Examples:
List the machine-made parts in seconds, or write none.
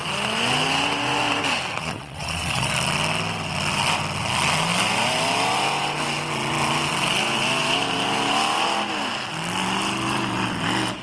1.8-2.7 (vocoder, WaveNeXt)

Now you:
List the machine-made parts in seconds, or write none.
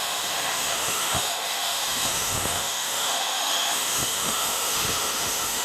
0.0-5.6 (autoencoder, DAC-VAE)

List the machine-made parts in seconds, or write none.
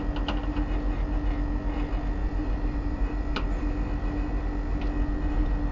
2.2-3.5 (vocoder, BigVGAN v2)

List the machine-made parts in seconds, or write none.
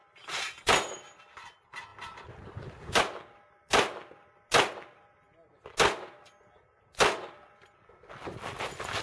0.0-1.2 (vocoder, BigVGAN v2)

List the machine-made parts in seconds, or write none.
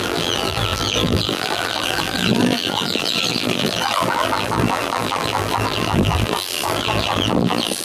0.0-7.8 (vocoder, BigVGAN v2)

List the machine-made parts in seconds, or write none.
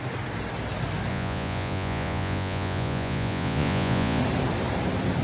1.1-4.2 (vocoder, Vocos)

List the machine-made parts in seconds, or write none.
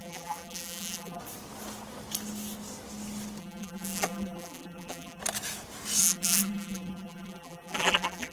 0.0-1.2 (vocoder, BigVGAN v2); 3.4-5.2; 6.0-8.3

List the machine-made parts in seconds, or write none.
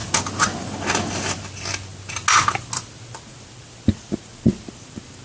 none